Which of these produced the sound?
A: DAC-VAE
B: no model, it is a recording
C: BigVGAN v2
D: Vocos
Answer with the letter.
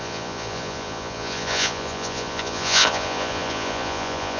D